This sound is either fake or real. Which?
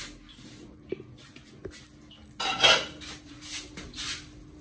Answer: real